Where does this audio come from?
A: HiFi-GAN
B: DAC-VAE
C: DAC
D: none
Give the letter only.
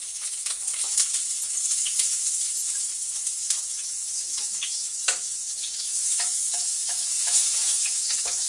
B